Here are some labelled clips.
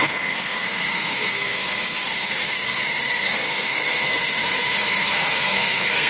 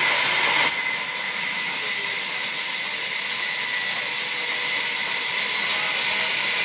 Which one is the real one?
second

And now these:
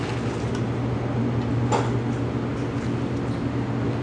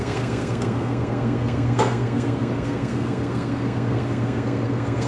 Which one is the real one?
first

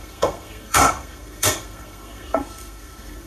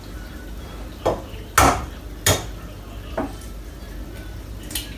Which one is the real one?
second